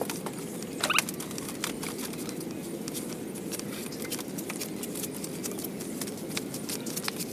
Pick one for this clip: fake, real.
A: real